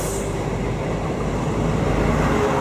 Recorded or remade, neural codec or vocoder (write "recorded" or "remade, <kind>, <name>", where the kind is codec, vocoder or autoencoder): recorded